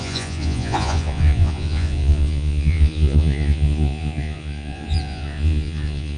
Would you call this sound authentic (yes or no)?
no